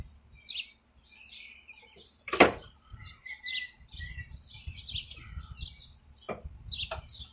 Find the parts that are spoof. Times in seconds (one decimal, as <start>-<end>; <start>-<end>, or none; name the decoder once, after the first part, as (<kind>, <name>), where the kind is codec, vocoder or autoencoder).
1.8-4.8 (vocoder, BigVGAN v2)